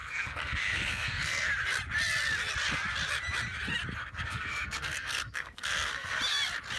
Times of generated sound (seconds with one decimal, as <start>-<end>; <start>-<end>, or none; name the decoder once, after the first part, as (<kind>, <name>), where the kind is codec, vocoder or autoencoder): 0.0-1.5 (codec, SNAC); 4.0-6.2